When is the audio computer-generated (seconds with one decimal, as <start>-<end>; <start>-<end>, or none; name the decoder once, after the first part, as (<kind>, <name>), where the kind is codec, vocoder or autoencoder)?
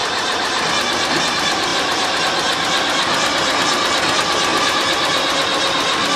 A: 0.0-0.6 (vocoder, BigVGAN v2); 1.7-2.2; 4.5-5.4